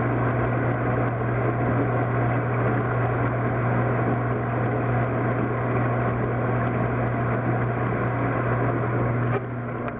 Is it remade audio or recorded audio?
recorded